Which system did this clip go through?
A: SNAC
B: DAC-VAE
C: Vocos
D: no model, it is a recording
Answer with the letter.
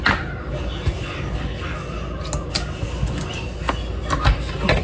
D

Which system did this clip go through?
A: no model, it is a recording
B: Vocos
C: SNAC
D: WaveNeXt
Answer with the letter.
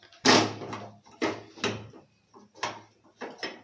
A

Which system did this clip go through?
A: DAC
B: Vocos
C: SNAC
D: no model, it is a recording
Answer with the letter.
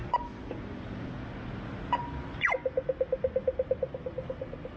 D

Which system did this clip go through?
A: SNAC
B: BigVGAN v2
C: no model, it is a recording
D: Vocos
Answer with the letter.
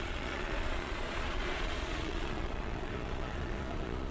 D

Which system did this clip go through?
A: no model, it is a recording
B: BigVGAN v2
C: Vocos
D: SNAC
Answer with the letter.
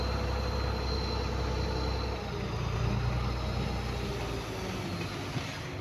A